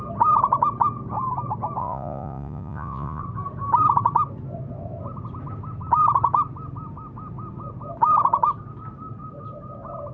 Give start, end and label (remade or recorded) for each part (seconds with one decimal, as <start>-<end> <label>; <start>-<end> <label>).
0.0-1.8 recorded; 1.8-3.2 remade; 3.2-10.1 recorded